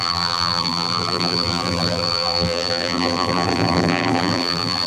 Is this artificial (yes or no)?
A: yes